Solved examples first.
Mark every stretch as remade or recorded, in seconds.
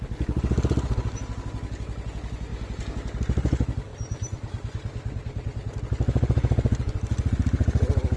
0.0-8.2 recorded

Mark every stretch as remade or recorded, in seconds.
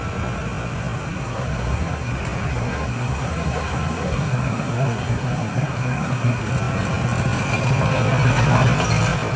0.0-1.1 recorded; 1.1-2.1 remade; 2.1-2.5 recorded; 2.5-6.5 remade; 6.5-9.4 recorded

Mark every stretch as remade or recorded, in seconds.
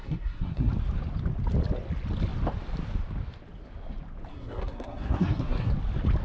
0.0-0.7 remade; 0.7-4.3 recorded; 4.3-5.7 remade; 5.7-6.2 recorded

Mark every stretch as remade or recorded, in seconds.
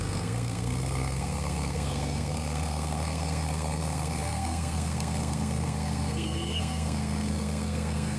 0.0-8.2 remade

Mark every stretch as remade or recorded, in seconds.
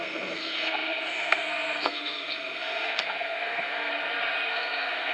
0.0-3.9 remade; 3.9-4.5 recorded; 4.5-5.1 remade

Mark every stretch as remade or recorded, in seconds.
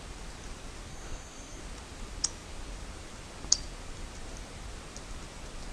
0.0-0.9 recorded; 0.9-1.6 remade; 1.6-5.7 recorded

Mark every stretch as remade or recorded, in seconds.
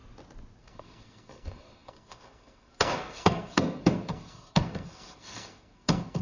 0.0-0.6 recorded; 0.6-6.2 remade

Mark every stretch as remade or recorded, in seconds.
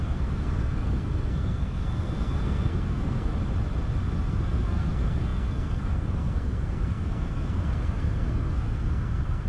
0.0-3.3 remade; 3.3-4.3 recorded; 4.3-9.5 remade